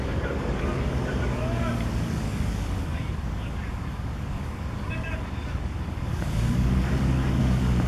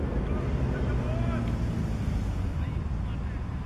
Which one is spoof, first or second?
first